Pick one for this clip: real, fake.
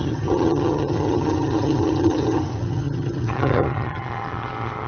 fake